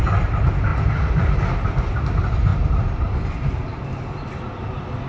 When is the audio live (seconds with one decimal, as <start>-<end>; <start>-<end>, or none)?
0.0-0.7; 1.4-2.5; 3.9-5.1